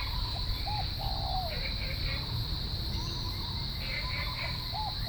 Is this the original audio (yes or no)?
yes